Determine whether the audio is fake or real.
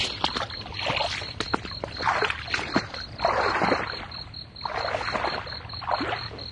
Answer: real